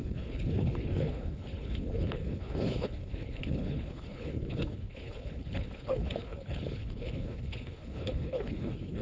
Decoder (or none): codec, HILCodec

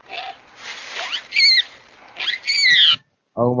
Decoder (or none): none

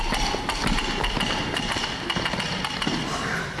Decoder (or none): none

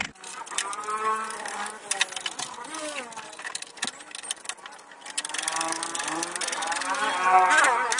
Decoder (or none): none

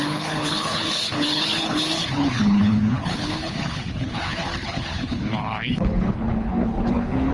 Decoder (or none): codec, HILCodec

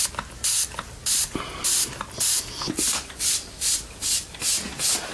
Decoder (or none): none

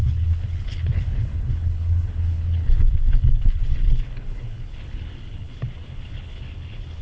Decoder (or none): codec, HILCodec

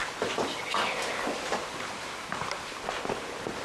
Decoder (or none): none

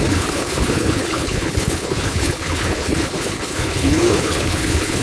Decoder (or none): codec, HILCodec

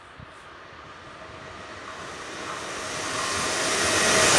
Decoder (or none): none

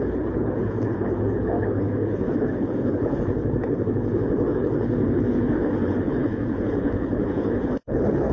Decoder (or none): codec, HILCodec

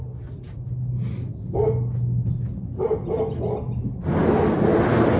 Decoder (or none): none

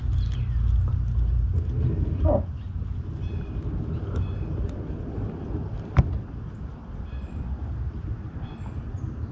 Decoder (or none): none